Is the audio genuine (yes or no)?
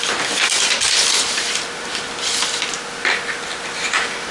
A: yes